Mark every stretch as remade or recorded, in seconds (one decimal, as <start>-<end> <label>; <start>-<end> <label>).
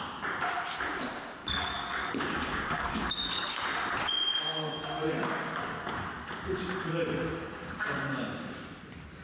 0.0-1.4 recorded; 1.4-3.5 remade; 3.5-9.2 recorded